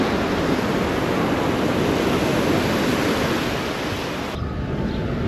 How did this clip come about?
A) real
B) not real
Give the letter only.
A